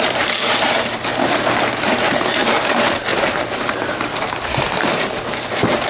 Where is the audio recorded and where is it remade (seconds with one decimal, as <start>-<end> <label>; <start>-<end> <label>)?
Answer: 0.0-1.1 remade; 1.1-1.8 recorded; 1.8-5.9 remade

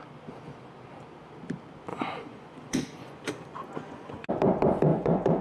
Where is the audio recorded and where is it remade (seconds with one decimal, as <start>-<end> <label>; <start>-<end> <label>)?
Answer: 0.0-1.9 recorded; 1.9-4.3 remade; 4.3-4.9 recorded; 4.9-5.4 remade

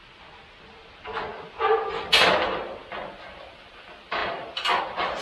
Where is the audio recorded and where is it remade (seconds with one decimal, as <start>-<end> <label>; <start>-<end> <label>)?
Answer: 0.0-5.2 recorded

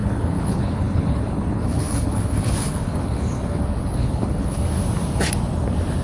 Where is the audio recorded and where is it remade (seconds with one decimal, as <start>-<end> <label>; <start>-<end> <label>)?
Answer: 0.0-3.4 remade; 3.4-4.0 recorded; 4.0-4.6 remade; 4.6-6.0 recorded

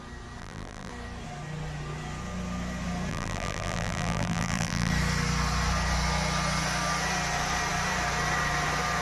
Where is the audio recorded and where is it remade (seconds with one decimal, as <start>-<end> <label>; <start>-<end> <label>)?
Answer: 0.0-0.4 recorded; 0.4-0.9 remade; 0.9-3.1 recorded; 3.1-4.9 remade; 4.9-9.0 recorded

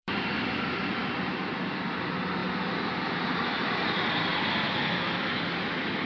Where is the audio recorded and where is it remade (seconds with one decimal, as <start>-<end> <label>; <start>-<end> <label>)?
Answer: 0.0-1.0 remade; 1.0-1.6 recorded; 1.6-2.4 remade; 2.4-3.7 recorded; 3.7-4.3 remade; 4.3-5.3 recorded; 5.3-6.1 remade

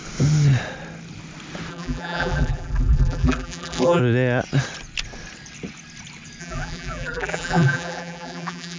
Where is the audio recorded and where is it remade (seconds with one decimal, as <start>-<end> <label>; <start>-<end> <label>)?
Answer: 0.0-1.7 recorded; 1.7-4.0 remade; 4.0-6.4 recorded; 6.4-8.8 remade

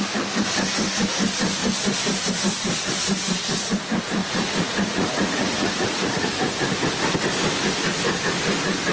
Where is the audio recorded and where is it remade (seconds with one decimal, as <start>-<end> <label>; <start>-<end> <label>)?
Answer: 0.0-4.2 recorded; 4.2-6.3 remade; 6.3-8.9 recorded